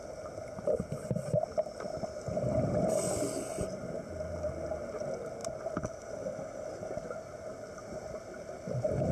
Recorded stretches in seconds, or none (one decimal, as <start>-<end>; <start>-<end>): 0.0-9.1

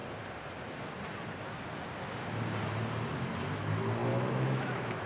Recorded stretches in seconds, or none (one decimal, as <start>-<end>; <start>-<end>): 0.0-4.1

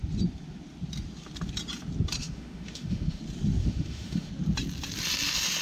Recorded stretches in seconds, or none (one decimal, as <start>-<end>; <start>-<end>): 0.0-2.2; 3.2-3.6; 4.3-5.6

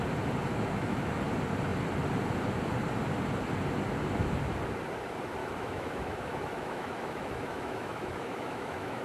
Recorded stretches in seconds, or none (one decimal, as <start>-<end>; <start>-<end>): 0.0-0.5; 1.1-5.4

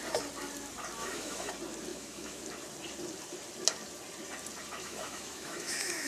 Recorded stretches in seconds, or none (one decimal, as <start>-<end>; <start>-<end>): 0.0-1.0; 1.5-1.9; 2.4-4.8

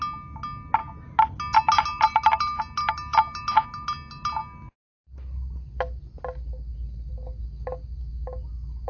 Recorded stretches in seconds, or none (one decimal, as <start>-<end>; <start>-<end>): 0.0-8.9

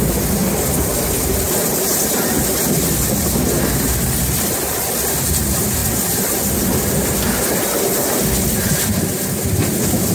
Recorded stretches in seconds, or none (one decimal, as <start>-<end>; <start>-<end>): 0.0-10.1

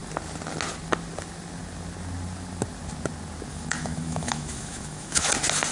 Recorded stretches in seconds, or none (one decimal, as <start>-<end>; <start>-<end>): 0.0-3.5; 5.3-5.7